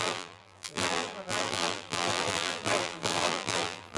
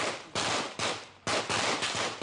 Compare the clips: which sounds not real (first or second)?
first